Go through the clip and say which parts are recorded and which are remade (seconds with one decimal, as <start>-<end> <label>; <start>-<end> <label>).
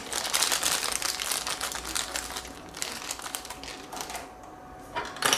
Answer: 0.0-5.4 recorded